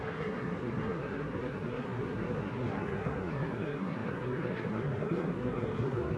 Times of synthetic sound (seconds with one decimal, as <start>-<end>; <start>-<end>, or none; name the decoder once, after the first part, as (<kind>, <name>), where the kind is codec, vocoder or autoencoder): 0.0-6.2 (codec, SNAC)